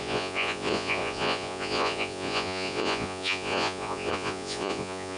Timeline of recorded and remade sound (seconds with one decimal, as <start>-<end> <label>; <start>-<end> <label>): 0.0-5.2 remade